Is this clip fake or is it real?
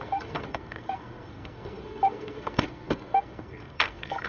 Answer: fake